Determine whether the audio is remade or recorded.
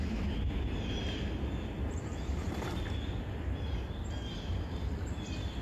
recorded